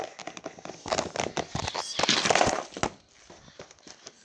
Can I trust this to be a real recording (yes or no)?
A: yes